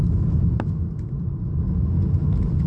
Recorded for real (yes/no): yes